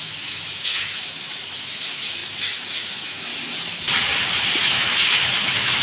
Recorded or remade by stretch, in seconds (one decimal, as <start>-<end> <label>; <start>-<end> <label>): 0.0-3.3 remade; 3.3-4.6 recorded; 4.6-5.8 remade